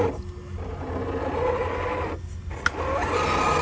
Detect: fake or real real